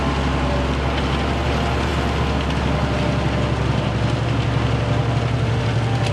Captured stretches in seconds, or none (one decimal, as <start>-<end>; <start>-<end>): 0.0-6.1